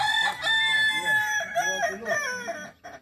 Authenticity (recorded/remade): recorded